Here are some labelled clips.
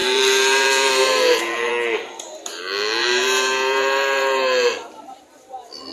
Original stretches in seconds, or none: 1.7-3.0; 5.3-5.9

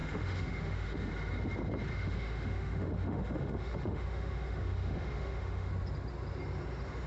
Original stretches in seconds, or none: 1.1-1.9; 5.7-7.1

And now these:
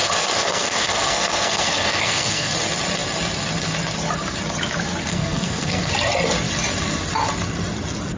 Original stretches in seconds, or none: 2.5-5.1; 5.9-8.2